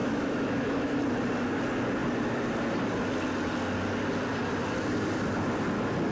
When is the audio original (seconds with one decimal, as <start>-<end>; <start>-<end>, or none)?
1.0-6.1

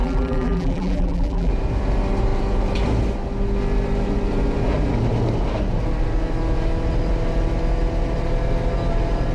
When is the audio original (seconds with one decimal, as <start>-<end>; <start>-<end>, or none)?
1.5-9.3

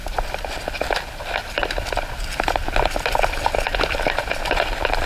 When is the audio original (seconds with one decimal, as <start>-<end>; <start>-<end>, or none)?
0.0-5.1

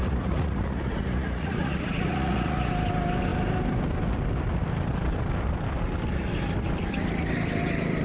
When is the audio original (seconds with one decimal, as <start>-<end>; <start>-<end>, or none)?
2.7-8.0

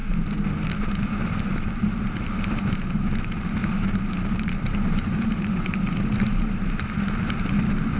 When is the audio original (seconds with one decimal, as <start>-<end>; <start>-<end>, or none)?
0.0-1.5; 2.8-3.6; 6.7-8.0

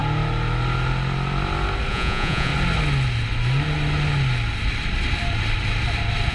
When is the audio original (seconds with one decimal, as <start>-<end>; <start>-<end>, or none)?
0.0-1.9; 2.5-6.3

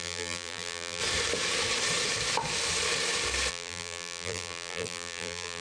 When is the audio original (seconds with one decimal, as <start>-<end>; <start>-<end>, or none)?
1.0-3.5

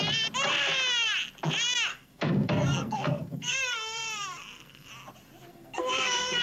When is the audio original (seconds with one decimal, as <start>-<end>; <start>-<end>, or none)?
0.0-1.9; 4.9-5.5